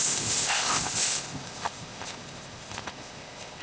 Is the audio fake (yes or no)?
yes